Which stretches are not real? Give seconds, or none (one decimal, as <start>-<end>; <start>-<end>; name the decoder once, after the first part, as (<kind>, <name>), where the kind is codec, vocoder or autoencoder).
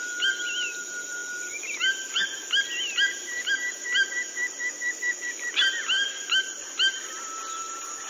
none